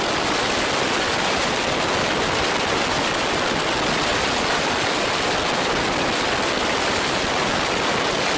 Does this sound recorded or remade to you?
recorded